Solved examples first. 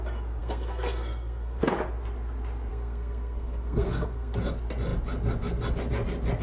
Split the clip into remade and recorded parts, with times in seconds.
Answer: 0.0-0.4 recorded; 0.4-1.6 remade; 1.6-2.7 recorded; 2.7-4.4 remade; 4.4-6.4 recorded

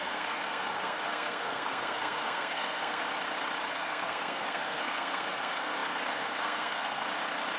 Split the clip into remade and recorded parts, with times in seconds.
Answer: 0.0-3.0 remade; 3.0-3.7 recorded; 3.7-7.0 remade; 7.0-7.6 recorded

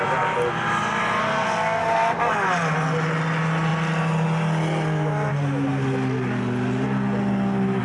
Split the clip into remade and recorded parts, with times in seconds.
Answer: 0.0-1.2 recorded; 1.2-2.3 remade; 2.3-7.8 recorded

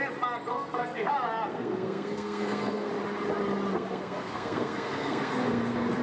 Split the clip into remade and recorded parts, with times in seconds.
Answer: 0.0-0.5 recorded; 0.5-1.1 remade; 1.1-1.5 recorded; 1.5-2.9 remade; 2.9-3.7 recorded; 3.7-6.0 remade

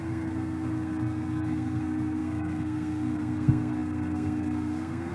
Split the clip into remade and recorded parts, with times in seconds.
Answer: 0.0-5.1 remade